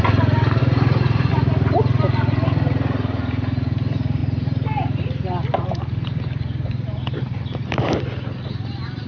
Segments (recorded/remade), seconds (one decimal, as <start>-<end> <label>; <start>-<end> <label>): 0.0-0.6 recorded; 0.6-1.3 remade; 1.3-9.1 recorded